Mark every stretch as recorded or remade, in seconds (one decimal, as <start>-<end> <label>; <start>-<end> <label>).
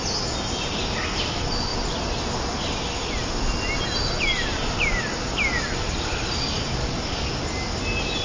0.0-6.8 recorded; 6.8-7.3 remade; 7.3-8.2 recorded